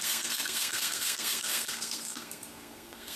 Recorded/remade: remade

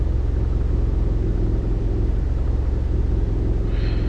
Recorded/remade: recorded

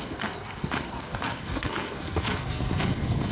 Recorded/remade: remade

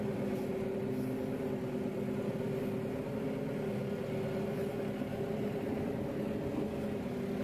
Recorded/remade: recorded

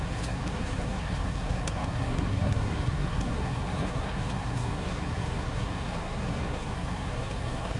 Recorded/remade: remade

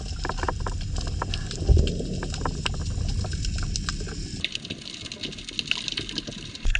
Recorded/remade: recorded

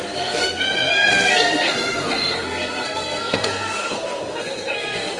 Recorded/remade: remade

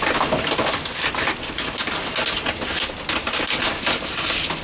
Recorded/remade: recorded